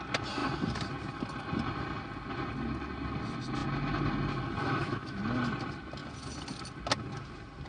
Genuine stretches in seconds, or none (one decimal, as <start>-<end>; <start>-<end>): 0.0-4.6; 5.2-7.7